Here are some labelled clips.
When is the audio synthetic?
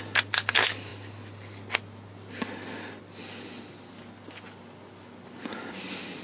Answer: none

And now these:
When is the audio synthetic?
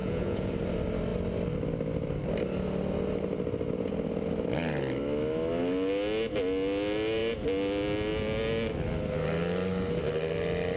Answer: 0.0-0.5 (vocoder, Vocos)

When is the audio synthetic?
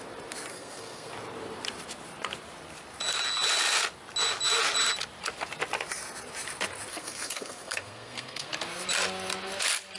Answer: 0.5-1.1 (codec, SNAC); 6.9-8.5